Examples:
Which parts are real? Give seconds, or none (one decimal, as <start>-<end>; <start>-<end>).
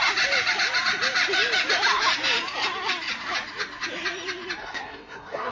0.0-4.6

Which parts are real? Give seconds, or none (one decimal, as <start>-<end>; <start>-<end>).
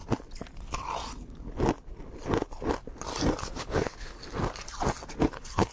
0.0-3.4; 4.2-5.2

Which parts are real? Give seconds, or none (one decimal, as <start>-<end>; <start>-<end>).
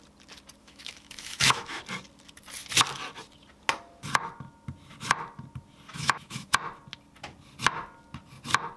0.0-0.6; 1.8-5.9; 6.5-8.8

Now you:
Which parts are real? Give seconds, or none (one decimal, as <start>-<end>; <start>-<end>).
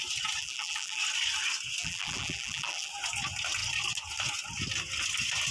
0.0-0.4; 1.0-1.8; 2.9-5.5